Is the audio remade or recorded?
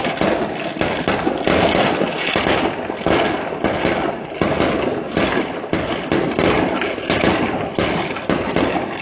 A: recorded